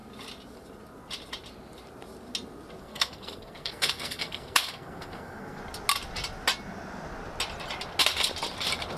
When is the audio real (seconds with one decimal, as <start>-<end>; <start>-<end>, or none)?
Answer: 0.0-2.8; 5.6-9.0